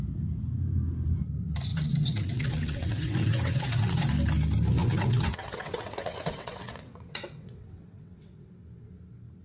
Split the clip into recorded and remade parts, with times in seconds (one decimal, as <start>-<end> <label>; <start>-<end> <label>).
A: 0.0-1.7 recorded; 1.7-4.1 remade; 4.1-4.8 recorded; 4.8-8.5 remade; 8.5-9.4 recorded